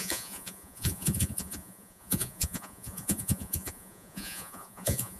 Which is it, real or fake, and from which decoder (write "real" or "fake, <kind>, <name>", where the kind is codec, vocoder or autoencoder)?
fake, vocoder, Vocos